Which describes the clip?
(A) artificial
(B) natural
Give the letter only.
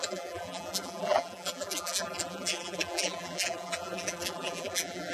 A